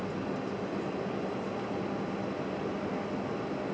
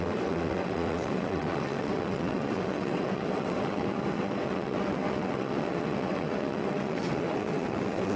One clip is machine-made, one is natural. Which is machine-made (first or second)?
second